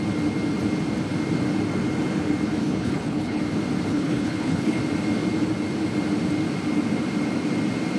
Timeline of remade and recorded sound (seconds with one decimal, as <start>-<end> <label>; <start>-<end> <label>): 0.0-2.6 recorded; 2.6-3.4 remade; 3.4-3.9 recorded; 3.9-4.8 remade; 4.8-8.0 recorded